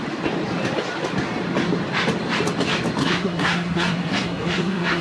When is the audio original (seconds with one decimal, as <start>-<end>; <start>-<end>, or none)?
0.0-3.0